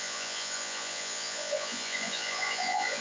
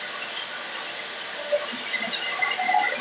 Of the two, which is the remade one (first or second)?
first